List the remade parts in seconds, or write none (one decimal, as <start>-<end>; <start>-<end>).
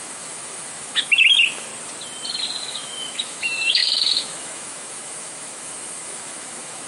0.0-1.7; 2.6-6.9